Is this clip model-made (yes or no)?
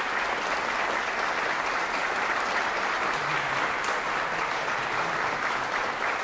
no